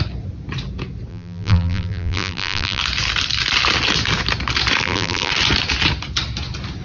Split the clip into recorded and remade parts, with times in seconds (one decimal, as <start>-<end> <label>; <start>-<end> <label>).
0.0-1.1 recorded; 1.1-2.8 remade; 2.8-4.8 recorded; 4.8-5.3 remade; 5.3-6.8 recorded